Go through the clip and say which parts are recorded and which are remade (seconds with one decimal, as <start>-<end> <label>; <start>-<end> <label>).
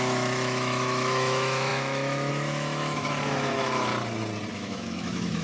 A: 0.0-3.9 remade; 3.9-4.5 recorded; 4.5-5.4 remade